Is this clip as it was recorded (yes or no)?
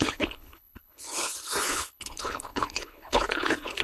no